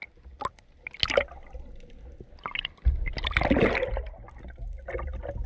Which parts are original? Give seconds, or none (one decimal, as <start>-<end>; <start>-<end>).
0.0-5.5